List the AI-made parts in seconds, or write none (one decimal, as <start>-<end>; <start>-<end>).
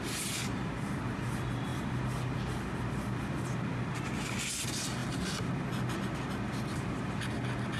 none